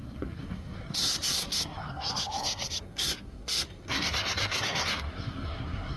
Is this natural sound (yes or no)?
no